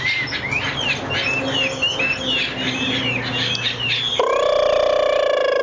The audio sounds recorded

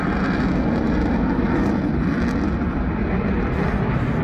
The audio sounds recorded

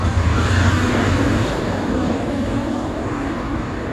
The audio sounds remade